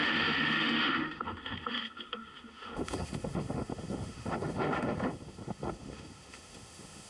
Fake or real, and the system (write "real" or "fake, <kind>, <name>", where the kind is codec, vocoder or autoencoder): fake, autoencoder, DAC-VAE